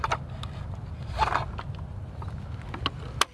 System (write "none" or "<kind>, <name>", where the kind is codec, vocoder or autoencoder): none